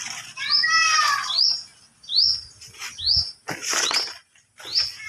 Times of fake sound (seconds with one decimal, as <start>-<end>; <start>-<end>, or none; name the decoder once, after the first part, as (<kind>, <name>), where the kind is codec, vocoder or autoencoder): none